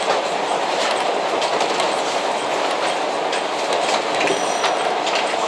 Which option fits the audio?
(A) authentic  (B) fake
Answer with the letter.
A